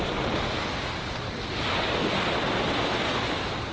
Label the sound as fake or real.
real